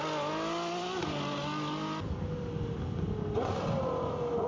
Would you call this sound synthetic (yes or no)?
no